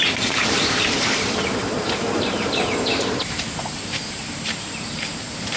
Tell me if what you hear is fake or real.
fake